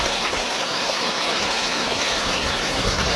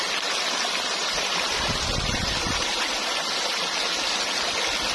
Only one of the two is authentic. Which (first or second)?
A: second